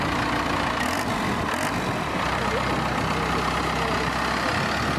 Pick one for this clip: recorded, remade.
recorded